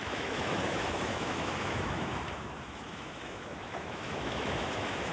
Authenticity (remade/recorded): remade